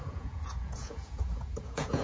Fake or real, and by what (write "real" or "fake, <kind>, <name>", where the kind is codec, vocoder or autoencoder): fake, vocoder, Vocos